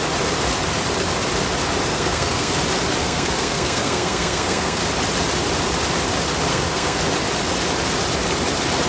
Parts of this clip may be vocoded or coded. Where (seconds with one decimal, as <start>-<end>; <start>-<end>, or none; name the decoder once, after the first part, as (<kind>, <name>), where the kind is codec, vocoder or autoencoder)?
1.9-2.6 (codec, SNAC); 3.0-4.8; 6.5-7.0